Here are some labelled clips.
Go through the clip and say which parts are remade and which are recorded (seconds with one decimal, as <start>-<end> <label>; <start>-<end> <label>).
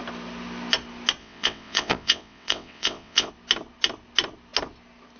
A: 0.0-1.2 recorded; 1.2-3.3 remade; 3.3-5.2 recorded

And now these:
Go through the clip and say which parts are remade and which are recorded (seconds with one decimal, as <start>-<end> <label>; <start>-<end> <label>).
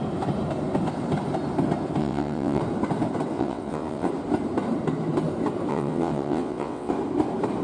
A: 0.0-2.0 recorded; 2.0-2.6 remade; 2.6-3.3 recorded; 3.3-4.1 remade; 4.1-5.7 recorded; 5.7-6.9 remade; 6.9-7.6 recorded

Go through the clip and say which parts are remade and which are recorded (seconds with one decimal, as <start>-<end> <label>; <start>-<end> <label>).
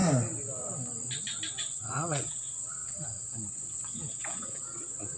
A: 0.0-1.5 recorded; 1.5-5.2 remade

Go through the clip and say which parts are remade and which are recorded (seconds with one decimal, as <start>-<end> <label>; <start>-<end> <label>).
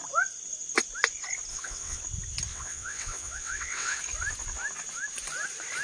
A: 0.0-1.5 recorded; 1.5-2.0 remade; 2.0-2.5 recorded; 2.5-4.0 remade; 4.0-5.8 recorded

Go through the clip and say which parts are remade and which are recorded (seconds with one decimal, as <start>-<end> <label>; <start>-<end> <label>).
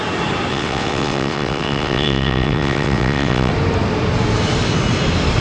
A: 0.0-0.5 recorded; 0.5-3.5 remade; 3.5-5.4 recorded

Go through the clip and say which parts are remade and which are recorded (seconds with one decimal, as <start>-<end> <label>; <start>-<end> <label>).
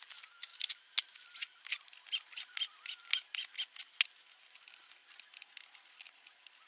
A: 0.0-6.7 recorded